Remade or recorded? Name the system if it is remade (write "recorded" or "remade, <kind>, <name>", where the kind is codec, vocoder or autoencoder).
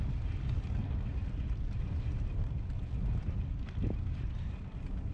recorded